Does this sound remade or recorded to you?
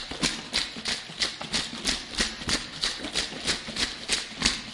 recorded